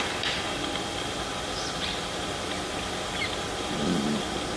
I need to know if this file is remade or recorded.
recorded